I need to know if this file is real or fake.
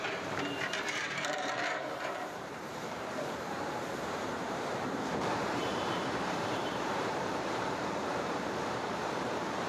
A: fake